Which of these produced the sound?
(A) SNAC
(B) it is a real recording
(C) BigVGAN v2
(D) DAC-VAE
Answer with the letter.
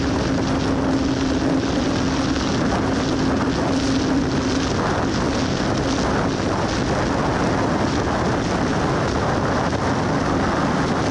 B